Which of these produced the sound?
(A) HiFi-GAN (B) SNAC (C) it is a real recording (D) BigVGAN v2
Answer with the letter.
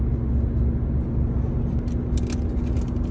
C